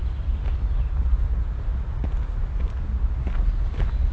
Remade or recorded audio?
recorded